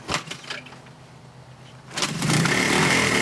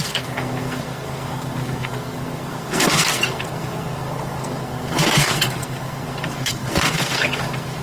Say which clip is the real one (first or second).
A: first